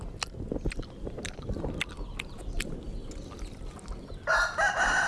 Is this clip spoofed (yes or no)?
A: no